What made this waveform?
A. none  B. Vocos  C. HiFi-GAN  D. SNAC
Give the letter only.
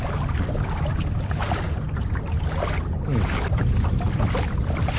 A